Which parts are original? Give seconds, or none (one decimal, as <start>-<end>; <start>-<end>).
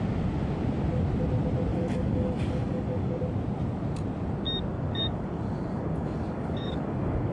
0.0-1.7; 3.2-4.7